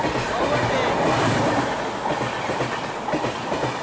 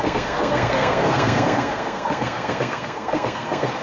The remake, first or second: second